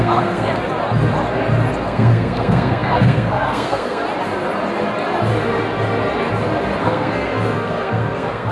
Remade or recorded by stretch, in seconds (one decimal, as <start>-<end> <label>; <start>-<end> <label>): 0.0-0.5 remade; 0.5-1.8 recorded; 1.8-4.0 remade; 4.0-6.8 recorded; 6.8-8.5 remade